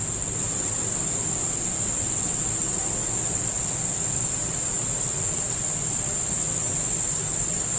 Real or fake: real